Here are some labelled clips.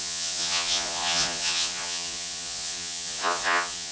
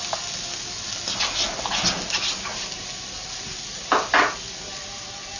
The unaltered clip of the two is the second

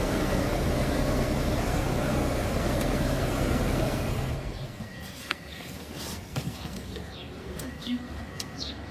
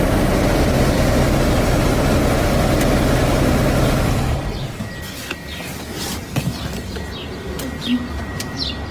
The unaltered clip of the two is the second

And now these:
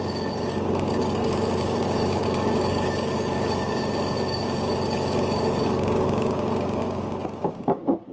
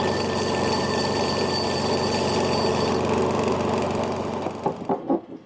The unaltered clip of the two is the second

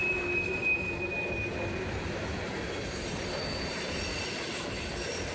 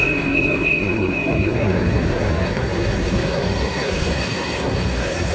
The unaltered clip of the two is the first